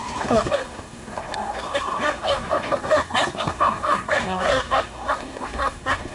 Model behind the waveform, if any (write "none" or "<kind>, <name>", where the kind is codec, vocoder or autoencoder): codec, SNAC